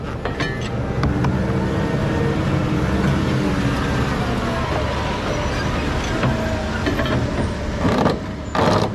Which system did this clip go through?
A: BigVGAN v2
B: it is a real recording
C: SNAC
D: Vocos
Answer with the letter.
B